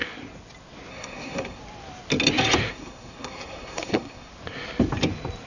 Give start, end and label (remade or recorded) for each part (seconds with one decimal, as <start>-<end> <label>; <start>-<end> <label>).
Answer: 0.0-0.9 recorded; 0.9-1.6 remade; 1.6-2.7 recorded; 2.7-4.3 remade; 4.3-5.5 recorded